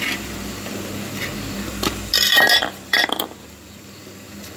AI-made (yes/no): yes